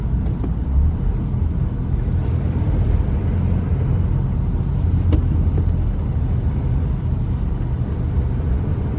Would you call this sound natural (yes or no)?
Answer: yes